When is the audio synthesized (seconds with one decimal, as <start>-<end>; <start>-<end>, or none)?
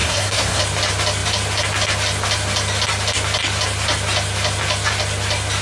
0.0-0.6